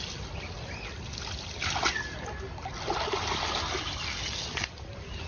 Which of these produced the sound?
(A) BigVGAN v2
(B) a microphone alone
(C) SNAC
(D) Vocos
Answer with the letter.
B